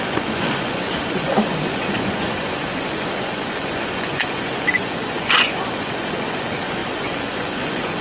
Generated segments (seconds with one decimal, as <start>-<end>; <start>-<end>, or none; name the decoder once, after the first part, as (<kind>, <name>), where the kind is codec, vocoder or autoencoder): 0.0-8.0 (vocoder, Vocos)